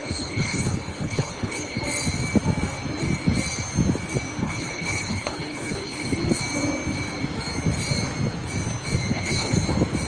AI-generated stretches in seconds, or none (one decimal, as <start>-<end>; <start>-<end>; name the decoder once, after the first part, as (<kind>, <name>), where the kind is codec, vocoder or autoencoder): 0.0-1.8 (codec, HILCodec); 4.4-6.2; 9.1-9.6